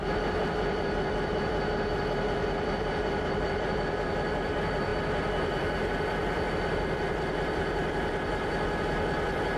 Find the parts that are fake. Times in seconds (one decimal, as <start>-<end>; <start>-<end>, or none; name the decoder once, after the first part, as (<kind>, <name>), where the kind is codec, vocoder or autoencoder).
0.0-9.6 (vocoder, BigVGAN v2)